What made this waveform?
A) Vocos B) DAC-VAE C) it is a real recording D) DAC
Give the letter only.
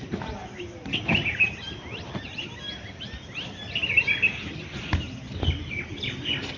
C